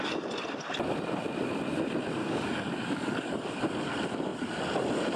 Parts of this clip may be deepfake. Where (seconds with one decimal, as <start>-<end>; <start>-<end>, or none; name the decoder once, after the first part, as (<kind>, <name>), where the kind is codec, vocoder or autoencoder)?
2.2-3.6 (codec, DAC)